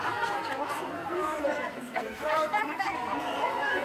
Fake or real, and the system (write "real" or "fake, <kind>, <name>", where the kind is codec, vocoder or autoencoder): fake, codec, SNAC